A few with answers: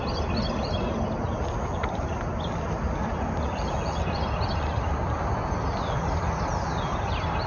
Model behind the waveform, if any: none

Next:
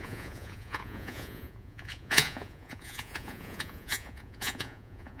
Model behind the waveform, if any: vocoder, Vocos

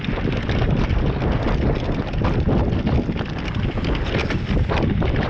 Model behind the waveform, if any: none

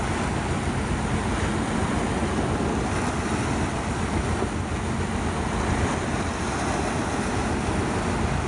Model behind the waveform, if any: none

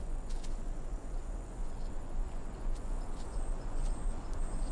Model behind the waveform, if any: vocoder, Vocos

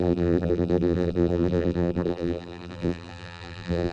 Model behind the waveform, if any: vocoder, BigVGAN v2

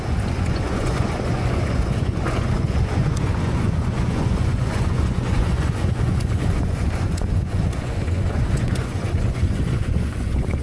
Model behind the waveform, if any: vocoder, Vocos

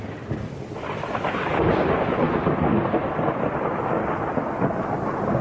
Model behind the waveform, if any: none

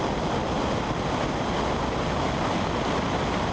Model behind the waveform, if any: none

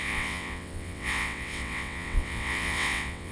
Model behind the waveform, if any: vocoder, WaveNeXt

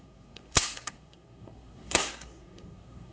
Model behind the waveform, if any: codec, SNAC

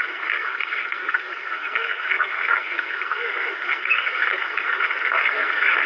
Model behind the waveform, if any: codec, SNAC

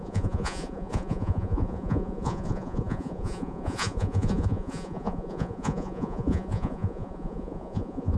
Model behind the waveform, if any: vocoder, Vocos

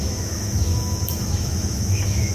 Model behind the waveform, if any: autoencoder, DAC-VAE